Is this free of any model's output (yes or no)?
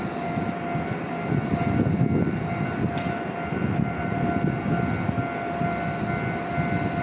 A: yes